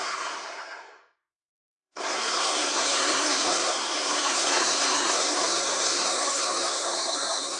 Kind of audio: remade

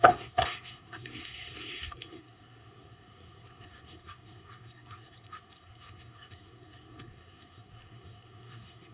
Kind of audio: remade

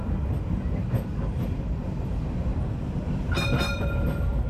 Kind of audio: recorded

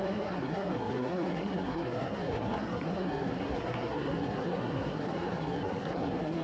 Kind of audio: remade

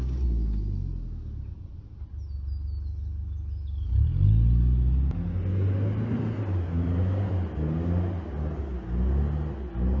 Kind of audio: recorded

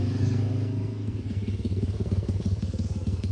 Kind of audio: remade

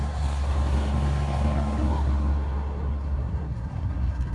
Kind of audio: remade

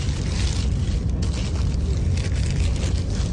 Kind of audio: recorded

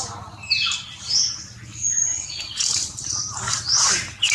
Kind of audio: recorded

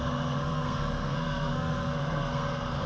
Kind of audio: remade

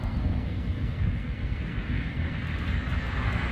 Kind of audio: remade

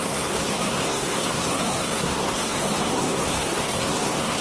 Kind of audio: remade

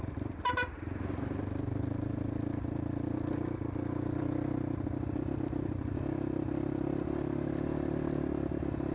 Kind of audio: recorded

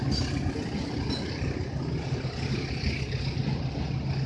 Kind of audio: recorded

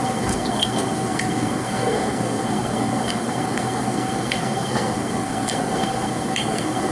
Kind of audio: remade